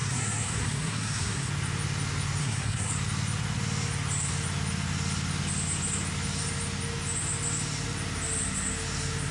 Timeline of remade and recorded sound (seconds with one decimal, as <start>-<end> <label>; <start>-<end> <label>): 0.0-1.5 remade; 1.5-2.4 recorded; 2.4-2.9 remade; 2.9-9.3 recorded